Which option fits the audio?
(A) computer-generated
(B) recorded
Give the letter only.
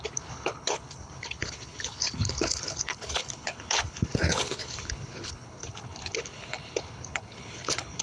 A